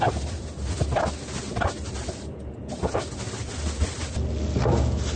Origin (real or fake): real